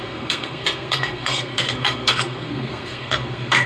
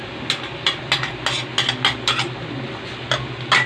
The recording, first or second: second